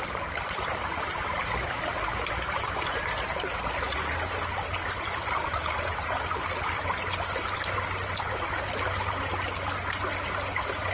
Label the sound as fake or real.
real